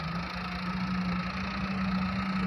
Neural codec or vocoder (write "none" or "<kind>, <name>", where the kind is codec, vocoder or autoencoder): none